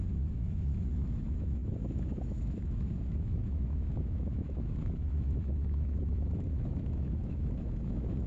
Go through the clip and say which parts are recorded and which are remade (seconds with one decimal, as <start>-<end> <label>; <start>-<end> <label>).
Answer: 0.0-8.3 remade